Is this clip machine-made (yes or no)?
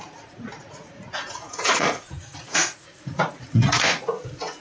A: yes